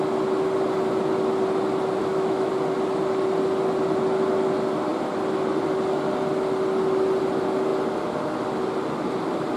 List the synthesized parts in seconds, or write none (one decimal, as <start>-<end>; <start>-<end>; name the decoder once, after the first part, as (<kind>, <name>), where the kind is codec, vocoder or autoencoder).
2.0-2.5 (autoencoder, DAC-VAE)